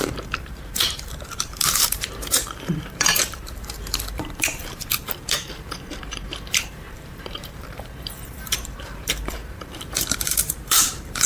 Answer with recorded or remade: remade